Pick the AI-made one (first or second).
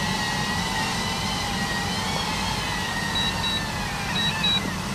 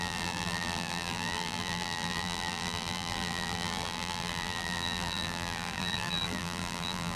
second